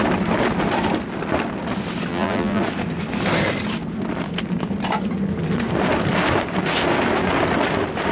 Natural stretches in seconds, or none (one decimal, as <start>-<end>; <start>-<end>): 0.0-2.1; 2.6-8.1